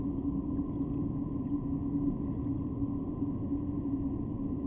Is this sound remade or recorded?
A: recorded